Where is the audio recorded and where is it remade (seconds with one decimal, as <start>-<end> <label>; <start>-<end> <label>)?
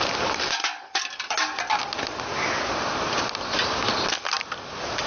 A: 0.0-5.1 recorded